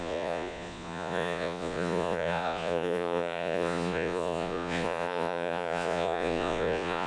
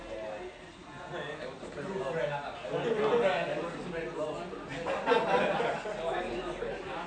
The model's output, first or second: first